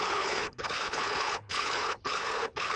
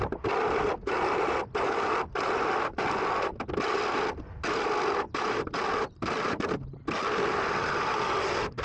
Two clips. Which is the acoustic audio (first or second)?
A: second